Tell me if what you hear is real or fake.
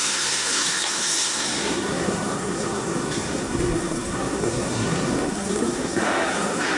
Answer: fake